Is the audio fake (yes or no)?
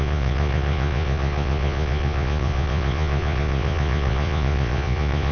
yes